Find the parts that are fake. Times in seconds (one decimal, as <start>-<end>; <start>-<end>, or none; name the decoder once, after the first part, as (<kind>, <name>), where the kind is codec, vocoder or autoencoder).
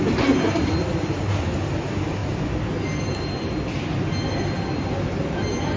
none